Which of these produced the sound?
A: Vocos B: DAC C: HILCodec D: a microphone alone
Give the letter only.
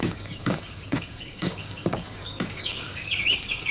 B